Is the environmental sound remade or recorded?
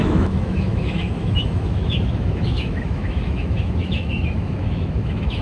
remade